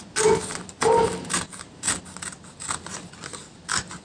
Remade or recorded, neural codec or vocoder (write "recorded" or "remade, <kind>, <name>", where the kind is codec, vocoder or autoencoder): recorded